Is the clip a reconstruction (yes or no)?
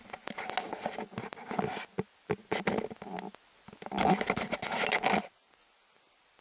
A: no